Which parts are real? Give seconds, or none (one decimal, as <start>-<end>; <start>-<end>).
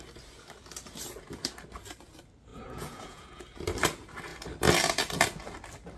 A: 0.0-2.5; 3.4-6.0